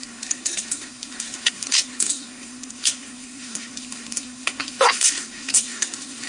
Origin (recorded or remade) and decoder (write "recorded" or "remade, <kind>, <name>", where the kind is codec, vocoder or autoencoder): remade, codec, SNAC